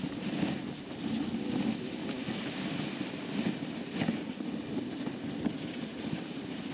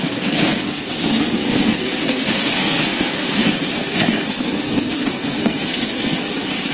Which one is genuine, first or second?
first